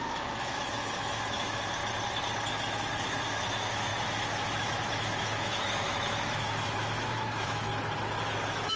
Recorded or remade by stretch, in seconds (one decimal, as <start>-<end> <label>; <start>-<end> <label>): 0.0-1.8 remade; 1.8-2.5 recorded; 2.5-7.7 remade; 7.7-8.2 recorded; 8.2-8.8 remade